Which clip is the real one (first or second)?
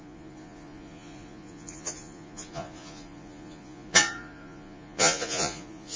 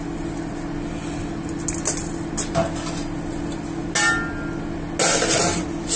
second